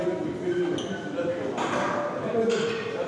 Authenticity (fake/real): real